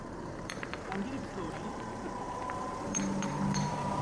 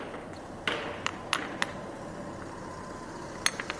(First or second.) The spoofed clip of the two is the first